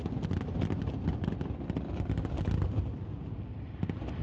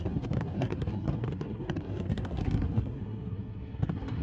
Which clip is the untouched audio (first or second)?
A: first